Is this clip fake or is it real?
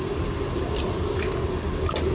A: real